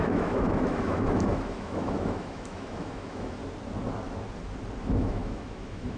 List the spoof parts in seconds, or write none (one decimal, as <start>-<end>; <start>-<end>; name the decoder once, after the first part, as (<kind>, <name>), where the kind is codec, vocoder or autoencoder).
0.0-3.4 (autoencoder, DAC-VAE); 4.8-6.0